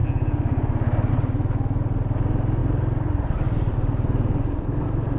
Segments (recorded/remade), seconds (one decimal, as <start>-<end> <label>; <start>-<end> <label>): 0.0-2.6 recorded; 2.6-5.2 remade